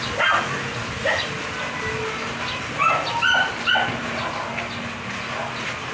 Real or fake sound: real